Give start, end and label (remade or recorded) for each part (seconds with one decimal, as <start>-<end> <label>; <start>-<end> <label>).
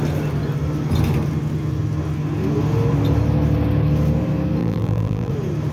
0.0-4.6 recorded; 4.6-5.3 remade; 5.3-5.7 recorded